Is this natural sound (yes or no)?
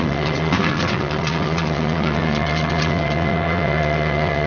no